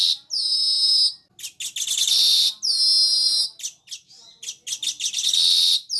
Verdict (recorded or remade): recorded